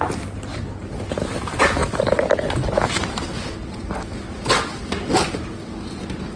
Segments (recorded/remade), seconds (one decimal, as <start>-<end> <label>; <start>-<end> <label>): 0.0-6.4 recorded